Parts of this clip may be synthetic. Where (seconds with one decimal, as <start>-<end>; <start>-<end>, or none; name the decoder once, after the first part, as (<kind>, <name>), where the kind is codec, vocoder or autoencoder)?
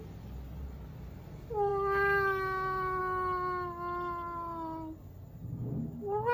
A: none